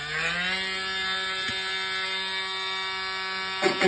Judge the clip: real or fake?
real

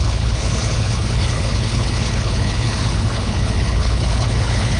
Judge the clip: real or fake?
fake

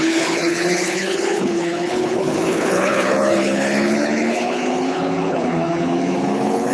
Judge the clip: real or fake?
fake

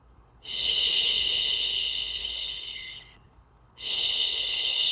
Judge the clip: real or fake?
fake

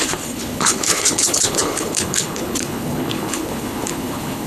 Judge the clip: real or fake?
fake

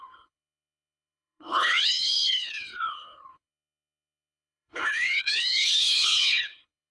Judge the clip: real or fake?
fake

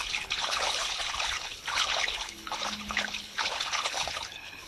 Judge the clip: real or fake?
fake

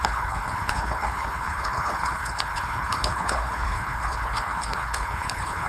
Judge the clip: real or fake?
fake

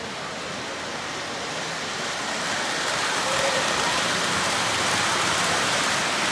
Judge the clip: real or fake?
real